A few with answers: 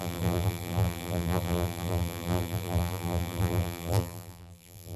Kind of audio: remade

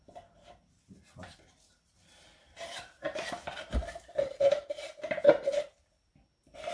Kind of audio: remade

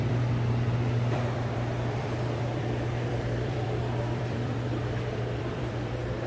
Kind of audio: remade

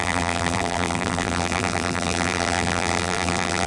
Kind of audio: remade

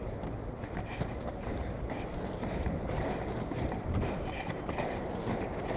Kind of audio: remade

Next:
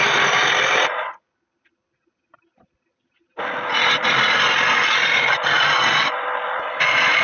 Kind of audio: remade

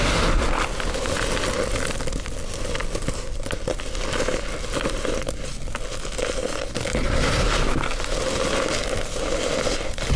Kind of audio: recorded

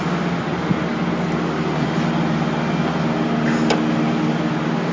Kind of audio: recorded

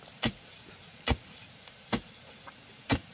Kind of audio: remade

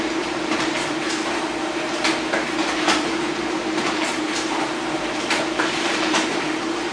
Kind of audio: remade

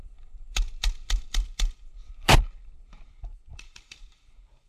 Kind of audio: remade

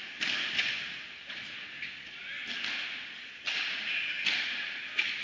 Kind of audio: recorded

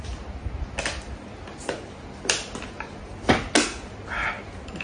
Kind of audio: recorded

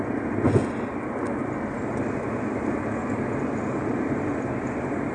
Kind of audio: recorded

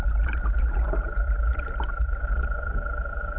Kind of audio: remade